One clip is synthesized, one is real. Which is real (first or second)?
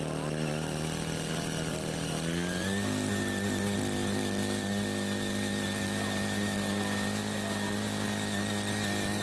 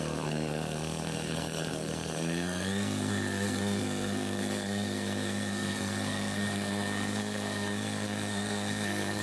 first